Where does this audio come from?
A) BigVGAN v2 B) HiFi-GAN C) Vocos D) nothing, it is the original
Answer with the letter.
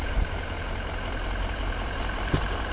A